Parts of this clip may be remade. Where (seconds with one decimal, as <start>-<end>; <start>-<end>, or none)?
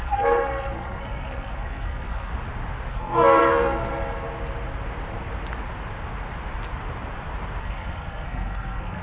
0.0-2.3; 2.9-3.9; 7.6-9.0